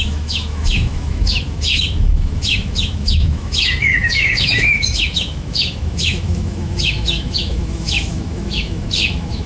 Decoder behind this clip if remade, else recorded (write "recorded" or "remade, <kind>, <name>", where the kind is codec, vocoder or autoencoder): remade, autoencoder, DAC-VAE